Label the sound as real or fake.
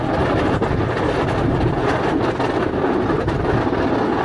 real